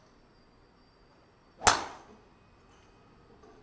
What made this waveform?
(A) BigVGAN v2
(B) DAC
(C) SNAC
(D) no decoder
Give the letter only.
D